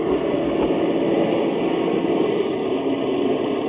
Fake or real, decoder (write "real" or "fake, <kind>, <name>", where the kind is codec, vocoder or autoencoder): real